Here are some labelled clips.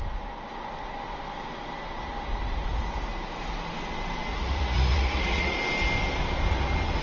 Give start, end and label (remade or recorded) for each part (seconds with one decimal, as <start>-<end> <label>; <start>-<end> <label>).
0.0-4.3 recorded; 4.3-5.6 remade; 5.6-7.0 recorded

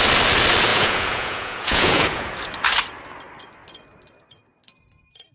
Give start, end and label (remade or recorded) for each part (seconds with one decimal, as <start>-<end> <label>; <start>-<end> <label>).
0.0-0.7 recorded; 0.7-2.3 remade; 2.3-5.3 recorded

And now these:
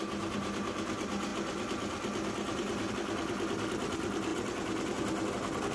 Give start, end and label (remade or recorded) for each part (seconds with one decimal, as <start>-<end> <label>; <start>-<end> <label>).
0.0-5.7 recorded

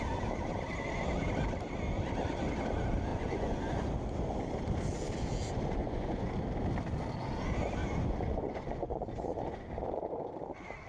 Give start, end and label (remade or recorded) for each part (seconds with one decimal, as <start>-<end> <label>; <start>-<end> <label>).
0.0-3.1 recorded; 3.1-3.8 remade; 3.8-5.8 recorded; 5.8-6.3 remade; 6.3-7.8 recorded; 7.8-9.7 remade; 9.7-10.9 recorded

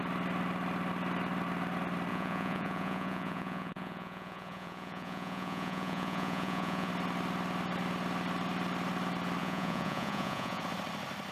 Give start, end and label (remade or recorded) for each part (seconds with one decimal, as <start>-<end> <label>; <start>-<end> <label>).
0.0-2.1 recorded; 2.1-6.9 remade; 6.9-9.4 recorded; 9.4-10.6 remade; 10.6-11.3 recorded

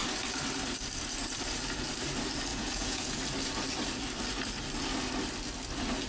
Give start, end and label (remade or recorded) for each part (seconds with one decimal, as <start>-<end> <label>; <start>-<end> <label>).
0.0-2.5 recorded; 2.5-3.2 remade; 3.2-6.1 recorded